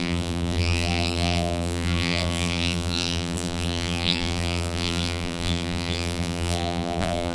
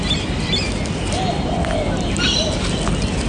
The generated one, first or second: first